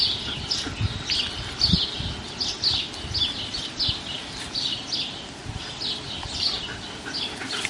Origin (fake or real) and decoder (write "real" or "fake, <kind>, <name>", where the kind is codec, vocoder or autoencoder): real